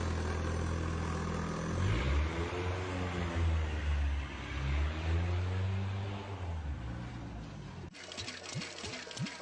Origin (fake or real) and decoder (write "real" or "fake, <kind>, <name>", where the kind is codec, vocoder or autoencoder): real